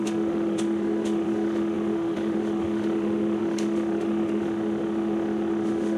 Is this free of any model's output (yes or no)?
no